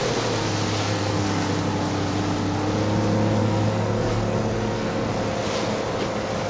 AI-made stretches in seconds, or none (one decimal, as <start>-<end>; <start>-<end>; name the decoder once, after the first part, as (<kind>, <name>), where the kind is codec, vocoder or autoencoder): 0.8-1.5 (codec, SNAC); 3.4-5.1